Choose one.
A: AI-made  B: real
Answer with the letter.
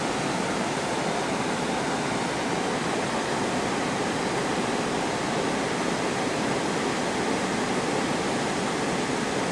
A